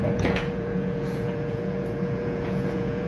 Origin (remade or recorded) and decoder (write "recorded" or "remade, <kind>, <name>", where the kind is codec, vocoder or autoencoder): remade, vocoder, Vocos